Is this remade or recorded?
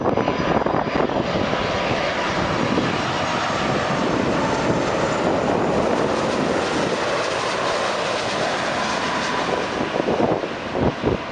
recorded